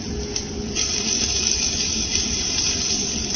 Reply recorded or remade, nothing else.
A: recorded